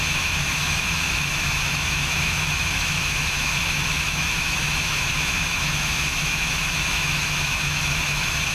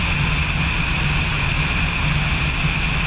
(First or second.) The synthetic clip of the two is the first